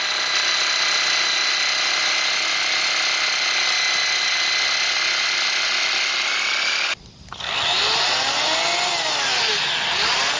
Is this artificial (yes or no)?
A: no